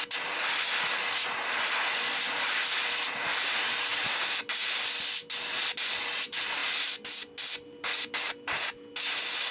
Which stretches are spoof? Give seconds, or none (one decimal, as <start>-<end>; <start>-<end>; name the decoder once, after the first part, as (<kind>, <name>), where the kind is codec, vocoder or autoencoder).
none